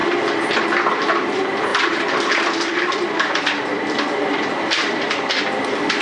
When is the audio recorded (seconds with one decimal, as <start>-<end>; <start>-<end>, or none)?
0.0-1.7; 5.3-6.0